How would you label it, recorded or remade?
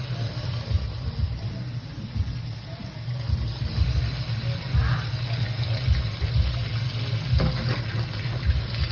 recorded